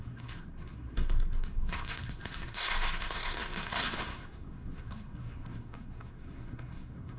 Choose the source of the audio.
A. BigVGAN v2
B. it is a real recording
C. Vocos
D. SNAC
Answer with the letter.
D